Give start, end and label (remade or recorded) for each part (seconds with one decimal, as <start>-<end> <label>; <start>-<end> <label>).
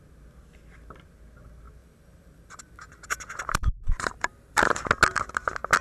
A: 0.0-1.8 recorded; 1.8-4.8 remade; 4.8-5.8 recorded